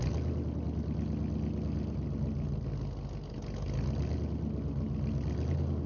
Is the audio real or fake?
real